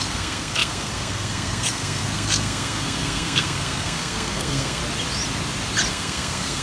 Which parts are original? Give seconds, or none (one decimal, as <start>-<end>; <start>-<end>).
4.8-5.9

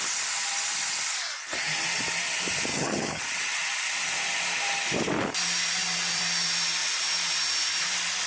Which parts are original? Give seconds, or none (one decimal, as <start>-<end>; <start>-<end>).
0.0-2.7; 3.2-8.3

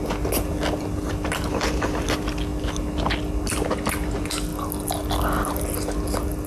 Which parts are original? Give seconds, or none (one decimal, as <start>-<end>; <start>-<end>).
0.0-6.5

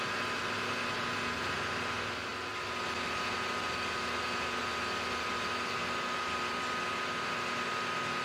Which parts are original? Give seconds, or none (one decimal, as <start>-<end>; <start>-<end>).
0.0-8.2

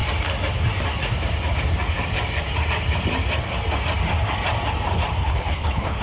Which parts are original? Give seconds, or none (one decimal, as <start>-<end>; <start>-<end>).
0.0-5.2

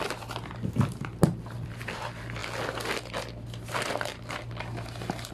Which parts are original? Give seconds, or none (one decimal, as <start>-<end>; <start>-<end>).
0.0-5.3

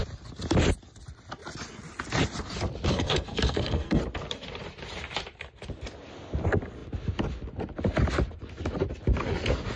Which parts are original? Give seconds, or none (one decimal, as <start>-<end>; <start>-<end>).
0.0-2.9; 4.0-9.8